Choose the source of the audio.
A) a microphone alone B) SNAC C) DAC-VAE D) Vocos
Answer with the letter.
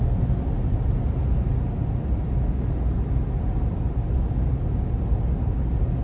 A